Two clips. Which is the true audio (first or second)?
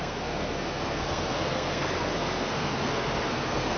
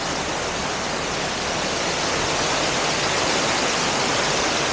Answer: second